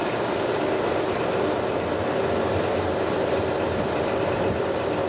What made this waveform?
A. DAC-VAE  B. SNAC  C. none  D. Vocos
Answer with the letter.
C